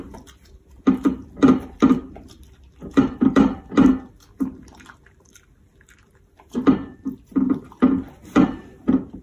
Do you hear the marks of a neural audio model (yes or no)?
yes